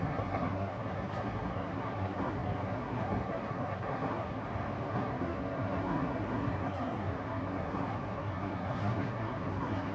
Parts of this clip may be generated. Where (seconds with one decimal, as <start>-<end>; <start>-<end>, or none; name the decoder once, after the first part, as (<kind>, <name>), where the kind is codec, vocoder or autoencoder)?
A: 0.0-4.4 (codec, SNAC); 4.9-9.9